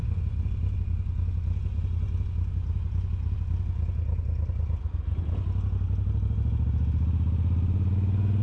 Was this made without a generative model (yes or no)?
yes